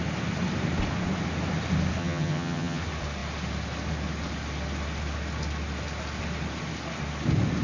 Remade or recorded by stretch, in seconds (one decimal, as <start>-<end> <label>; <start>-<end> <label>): 0.0-2.0 recorded; 2.0-2.8 remade; 2.8-7.6 recorded